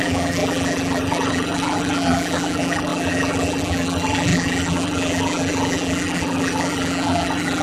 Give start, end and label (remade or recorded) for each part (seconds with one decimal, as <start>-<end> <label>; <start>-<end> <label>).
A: 0.0-7.6 remade